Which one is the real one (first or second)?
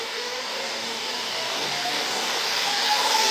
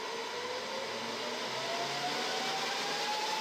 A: second